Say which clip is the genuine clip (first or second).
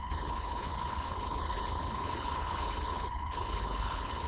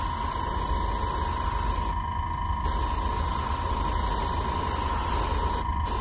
second